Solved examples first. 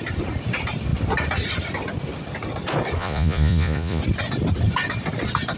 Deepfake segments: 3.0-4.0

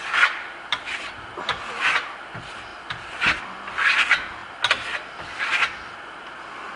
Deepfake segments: none

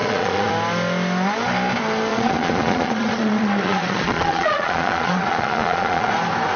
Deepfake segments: 0.0-0.5; 2.1-6.1

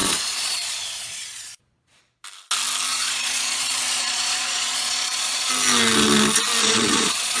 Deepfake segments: 0.0-2.0; 2.9-5.5; 6.6-7.4

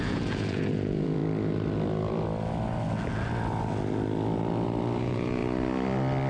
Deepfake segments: 0.0-1.2; 5.0-5.4

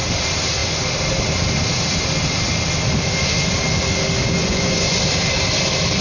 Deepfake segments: 4.4-5.0

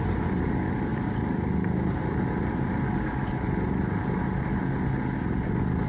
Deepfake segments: none

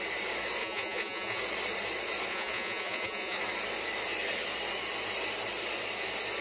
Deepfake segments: 0.6-1.4; 2.3-3.4